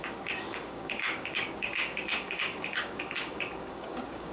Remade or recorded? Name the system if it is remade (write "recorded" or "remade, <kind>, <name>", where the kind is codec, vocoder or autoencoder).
remade, codec, DAC